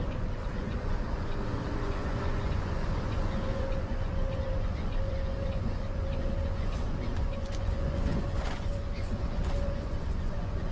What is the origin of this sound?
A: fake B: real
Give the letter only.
A